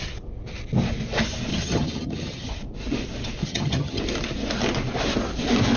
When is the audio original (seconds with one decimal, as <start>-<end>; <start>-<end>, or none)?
0.0-1.5; 2.5-3.4; 4.0-5.8